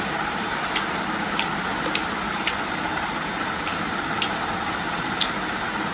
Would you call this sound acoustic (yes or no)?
yes